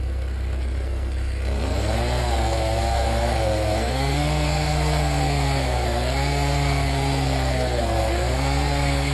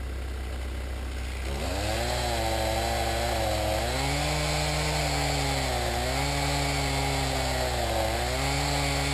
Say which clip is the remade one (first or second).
first